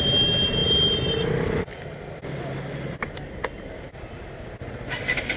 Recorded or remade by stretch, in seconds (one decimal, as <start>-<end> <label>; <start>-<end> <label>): 0.0-5.4 recorded